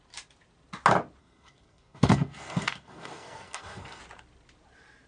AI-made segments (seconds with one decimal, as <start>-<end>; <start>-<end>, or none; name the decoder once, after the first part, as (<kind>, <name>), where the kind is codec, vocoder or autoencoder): 1.2-4.0 (codec, SNAC)